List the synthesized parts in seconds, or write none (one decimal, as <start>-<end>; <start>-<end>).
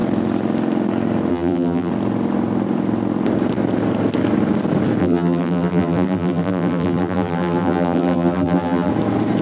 1.3-1.9; 5.0-8.9